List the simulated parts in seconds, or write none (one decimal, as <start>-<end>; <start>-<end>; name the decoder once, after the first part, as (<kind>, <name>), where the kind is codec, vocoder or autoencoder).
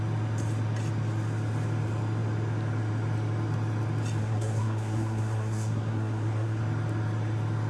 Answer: 4.2-6.6 (codec, SNAC)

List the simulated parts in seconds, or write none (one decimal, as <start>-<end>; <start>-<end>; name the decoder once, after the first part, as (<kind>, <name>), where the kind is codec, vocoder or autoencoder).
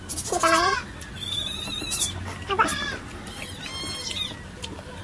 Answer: none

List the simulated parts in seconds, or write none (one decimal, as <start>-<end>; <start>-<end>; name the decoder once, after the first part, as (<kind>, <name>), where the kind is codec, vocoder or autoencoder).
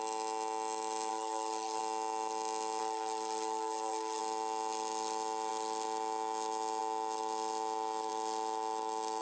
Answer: 1.1-1.8 (codec, SNAC); 2.8-4.2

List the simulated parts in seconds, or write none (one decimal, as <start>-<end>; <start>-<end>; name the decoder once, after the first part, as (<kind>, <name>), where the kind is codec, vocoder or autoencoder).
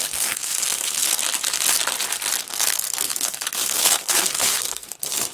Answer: 0.0-1.2 (codec, SNAC); 2.4-5.3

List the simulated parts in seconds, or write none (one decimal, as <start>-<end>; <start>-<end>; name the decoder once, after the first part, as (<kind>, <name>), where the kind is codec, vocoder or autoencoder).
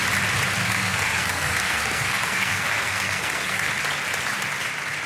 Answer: 0.6-3.7 (codec, SNAC)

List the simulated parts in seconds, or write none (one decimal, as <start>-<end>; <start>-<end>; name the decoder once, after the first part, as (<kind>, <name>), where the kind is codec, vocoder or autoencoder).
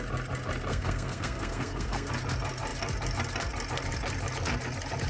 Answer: 0.7-2.1 (codec, SNAC)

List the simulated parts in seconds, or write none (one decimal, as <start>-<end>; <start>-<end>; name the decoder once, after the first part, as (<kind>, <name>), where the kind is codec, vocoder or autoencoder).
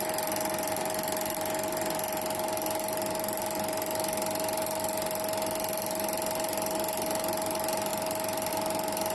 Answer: none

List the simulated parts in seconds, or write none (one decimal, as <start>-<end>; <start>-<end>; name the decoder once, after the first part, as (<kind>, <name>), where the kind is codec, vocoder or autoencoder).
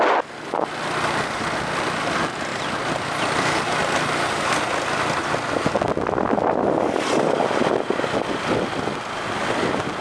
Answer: none